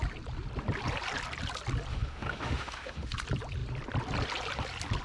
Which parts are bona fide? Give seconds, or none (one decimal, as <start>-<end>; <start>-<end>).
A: 0.0-1.9; 3.1-5.0